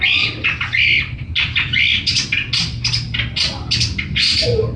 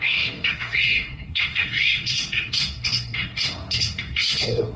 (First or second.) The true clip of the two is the first